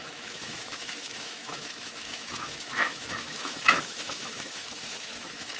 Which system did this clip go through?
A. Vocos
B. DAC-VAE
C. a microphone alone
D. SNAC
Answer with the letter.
B